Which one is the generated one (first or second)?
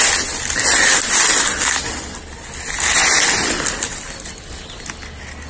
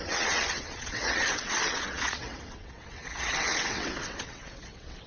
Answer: second